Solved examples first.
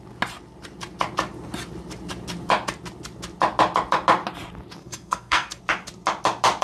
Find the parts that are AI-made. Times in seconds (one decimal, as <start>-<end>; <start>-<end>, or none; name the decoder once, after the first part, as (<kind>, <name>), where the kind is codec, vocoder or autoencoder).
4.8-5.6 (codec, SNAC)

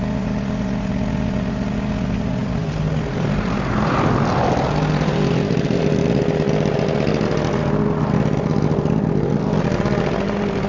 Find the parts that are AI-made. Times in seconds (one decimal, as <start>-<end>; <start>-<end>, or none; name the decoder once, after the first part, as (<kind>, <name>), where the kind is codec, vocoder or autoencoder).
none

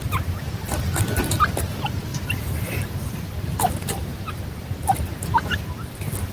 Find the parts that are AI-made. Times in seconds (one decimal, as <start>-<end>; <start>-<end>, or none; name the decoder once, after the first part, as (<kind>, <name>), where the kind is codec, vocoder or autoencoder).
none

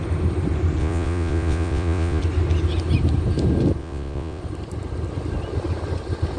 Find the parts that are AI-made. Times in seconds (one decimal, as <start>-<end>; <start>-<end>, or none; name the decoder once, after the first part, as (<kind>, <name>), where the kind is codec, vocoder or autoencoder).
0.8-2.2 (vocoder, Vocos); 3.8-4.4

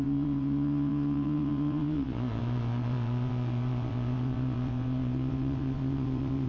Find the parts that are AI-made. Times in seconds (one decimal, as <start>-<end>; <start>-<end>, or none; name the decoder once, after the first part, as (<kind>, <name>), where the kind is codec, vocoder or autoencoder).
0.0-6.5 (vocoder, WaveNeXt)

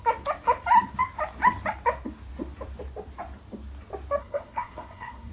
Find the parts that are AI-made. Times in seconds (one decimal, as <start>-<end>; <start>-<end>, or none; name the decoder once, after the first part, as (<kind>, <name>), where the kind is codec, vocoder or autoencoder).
4.2-5.3 (codec, SNAC)

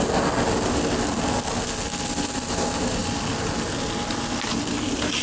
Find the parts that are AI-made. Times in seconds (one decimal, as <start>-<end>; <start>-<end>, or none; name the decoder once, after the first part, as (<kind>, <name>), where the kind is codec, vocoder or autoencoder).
none

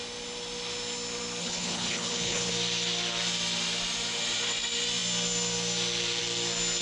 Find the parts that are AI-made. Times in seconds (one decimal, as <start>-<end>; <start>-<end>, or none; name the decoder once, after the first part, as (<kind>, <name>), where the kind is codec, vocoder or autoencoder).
1.4-2.5 (codec, HILCodec)